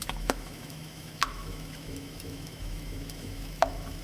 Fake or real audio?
fake